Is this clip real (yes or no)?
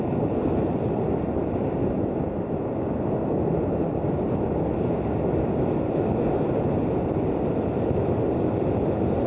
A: yes